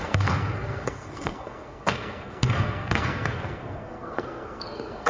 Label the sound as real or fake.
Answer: fake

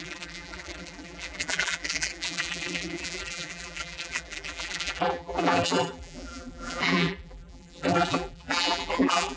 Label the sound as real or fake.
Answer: fake